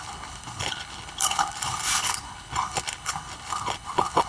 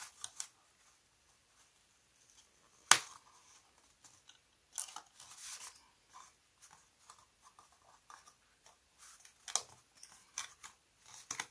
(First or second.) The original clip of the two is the second